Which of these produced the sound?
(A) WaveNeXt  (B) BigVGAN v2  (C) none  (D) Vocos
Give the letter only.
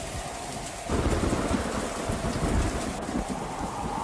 C